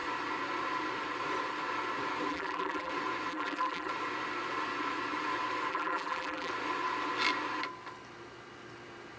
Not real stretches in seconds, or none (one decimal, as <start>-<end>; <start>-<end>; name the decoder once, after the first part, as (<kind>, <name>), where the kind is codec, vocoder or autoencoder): 2.3-2.9 (vocoder, BigVGAN v2); 3.3-3.9; 5.7-6.5